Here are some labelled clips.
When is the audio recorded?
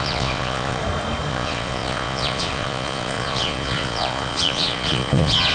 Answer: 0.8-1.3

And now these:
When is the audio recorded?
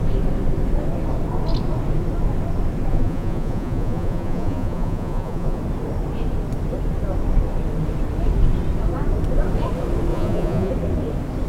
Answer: 0.0-2.9; 5.6-10.1; 10.7-11.5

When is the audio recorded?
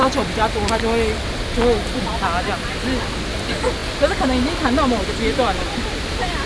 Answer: 0.0-6.5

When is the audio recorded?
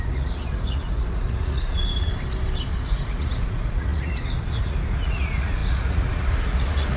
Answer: 2.1-2.9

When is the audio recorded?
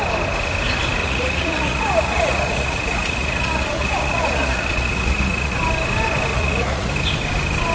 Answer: 0.0-1.0; 5.6-6.3; 6.9-7.7